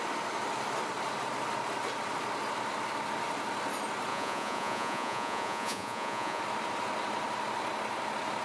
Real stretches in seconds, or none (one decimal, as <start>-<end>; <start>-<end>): 0.0-4.1; 6.4-8.4